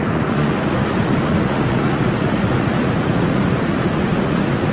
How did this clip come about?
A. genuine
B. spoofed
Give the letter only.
B